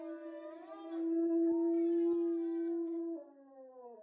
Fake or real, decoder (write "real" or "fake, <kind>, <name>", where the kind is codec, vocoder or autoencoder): real